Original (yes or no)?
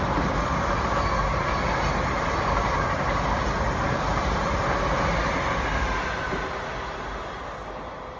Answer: yes